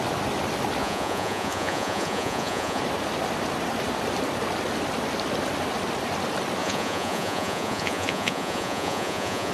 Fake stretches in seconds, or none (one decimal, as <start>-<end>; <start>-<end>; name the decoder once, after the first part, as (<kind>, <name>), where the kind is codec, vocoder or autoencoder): 0.8-2.8 (vocoder, Vocos); 6.6-9.5